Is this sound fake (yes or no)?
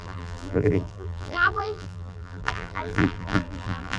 yes